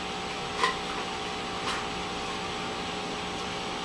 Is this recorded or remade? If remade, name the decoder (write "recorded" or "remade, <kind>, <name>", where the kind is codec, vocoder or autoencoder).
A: recorded